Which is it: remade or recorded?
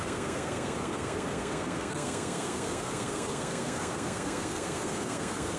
remade